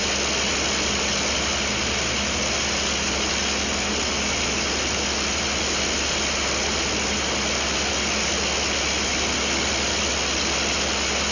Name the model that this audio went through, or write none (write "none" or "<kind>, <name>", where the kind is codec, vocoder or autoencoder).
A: none